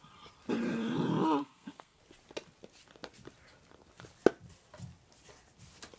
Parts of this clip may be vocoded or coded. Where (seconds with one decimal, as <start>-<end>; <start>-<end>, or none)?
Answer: 1.4-2.0